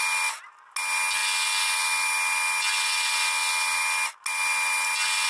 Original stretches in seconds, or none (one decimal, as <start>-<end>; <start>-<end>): 0.0-5.3